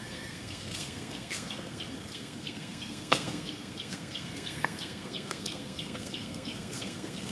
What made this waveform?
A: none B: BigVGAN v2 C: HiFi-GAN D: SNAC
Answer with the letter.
D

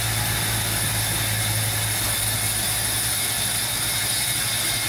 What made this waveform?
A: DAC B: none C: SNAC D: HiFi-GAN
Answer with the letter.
B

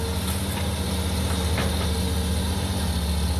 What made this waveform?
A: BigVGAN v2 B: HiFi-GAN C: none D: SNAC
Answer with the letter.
C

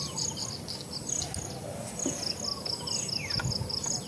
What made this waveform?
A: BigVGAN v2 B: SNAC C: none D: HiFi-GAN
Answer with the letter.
C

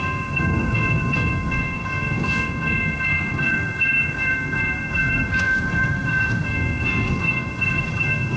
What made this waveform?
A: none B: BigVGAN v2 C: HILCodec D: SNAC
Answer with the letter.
D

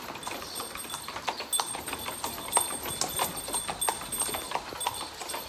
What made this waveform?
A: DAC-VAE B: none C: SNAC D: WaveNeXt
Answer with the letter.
B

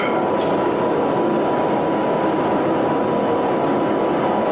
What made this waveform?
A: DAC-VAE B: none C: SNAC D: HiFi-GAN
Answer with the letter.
B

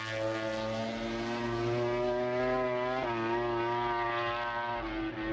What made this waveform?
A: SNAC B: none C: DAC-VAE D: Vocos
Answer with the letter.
B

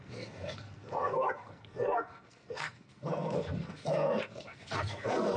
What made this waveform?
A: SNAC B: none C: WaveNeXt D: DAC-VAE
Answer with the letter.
A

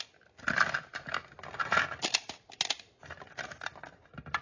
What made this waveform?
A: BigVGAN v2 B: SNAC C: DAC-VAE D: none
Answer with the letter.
D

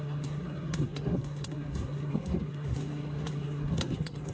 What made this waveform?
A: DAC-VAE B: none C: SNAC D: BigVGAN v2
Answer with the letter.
C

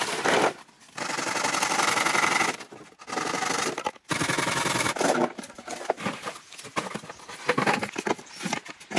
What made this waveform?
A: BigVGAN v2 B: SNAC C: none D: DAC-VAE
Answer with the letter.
C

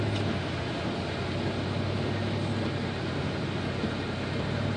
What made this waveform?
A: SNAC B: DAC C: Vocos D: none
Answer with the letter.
D